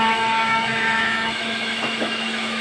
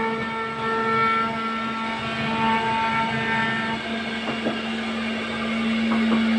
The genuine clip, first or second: second